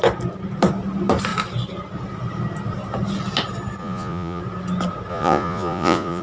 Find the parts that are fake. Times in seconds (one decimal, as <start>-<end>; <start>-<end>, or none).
3.8-4.4; 5.1-6.2